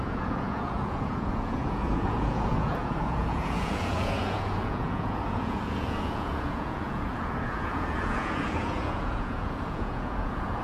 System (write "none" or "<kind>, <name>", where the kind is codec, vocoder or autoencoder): vocoder, Vocos